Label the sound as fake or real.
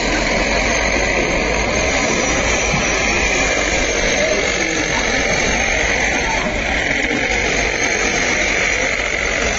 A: real